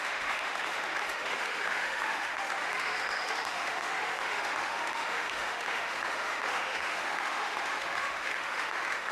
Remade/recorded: remade